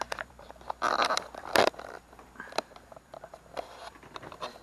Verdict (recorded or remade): remade